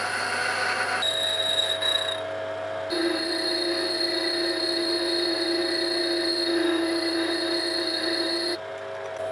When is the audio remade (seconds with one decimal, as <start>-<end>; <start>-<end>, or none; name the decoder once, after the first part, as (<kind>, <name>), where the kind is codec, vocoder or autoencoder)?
none